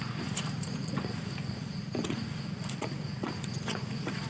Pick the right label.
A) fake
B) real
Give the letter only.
A